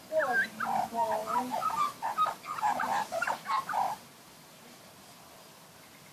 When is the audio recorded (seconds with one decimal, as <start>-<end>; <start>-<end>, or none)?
0.0-1.2; 4.9-6.1